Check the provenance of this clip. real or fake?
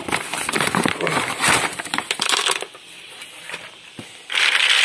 fake